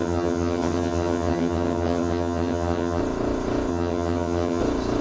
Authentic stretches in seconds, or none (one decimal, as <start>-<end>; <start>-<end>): 3.0-3.7; 4.6-5.0